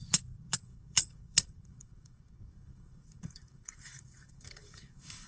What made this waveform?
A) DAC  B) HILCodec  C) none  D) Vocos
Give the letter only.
A